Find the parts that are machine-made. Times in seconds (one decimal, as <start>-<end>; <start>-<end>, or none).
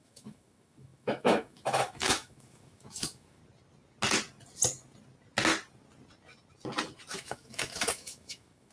0.0-3.4; 7.1-8.7